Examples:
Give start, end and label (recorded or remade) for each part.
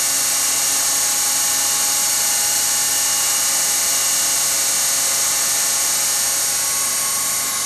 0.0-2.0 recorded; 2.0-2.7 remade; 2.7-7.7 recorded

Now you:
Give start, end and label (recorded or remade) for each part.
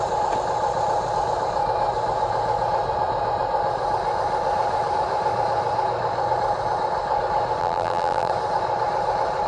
0.0-7.6 recorded; 7.6-8.3 remade; 8.3-9.5 recorded